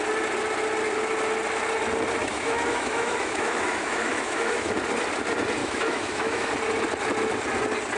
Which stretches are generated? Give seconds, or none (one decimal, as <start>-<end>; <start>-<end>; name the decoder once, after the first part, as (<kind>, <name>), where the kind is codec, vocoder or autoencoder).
2.2-4.7 (autoencoder, DAC-VAE); 5.6-6.5